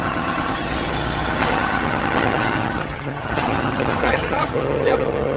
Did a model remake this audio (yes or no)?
yes